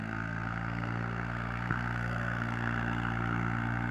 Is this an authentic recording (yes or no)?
no